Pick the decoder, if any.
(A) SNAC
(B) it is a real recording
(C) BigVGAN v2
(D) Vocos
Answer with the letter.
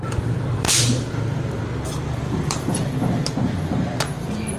C